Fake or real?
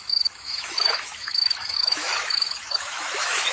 fake